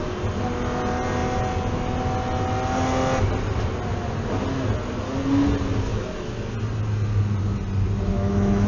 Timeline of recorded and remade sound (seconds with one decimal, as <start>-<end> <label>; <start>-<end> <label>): 0.0-8.1 recorded; 8.1-8.7 remade